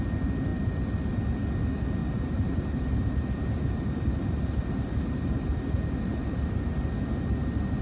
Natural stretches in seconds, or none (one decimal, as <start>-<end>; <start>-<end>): 0.0-2.0; 6.7-7.8

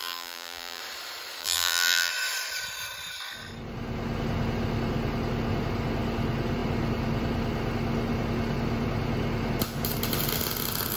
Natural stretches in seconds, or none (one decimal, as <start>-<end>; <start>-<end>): 0.8-1.4; 2.1-11.0

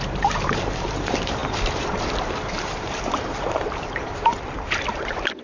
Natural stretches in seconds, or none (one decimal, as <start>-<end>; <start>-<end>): none